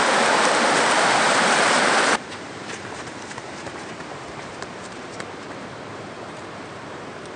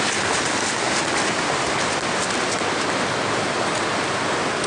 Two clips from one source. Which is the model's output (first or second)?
first